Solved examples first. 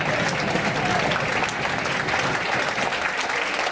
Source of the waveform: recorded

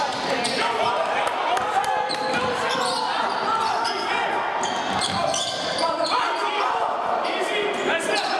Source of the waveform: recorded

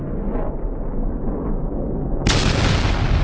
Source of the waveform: recorded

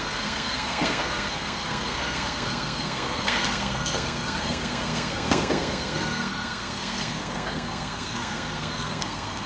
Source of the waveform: remade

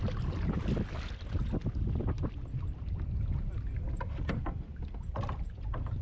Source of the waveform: recorded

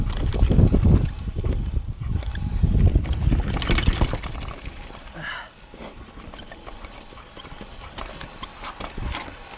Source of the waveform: recorded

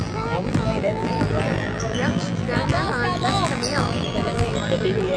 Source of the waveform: remade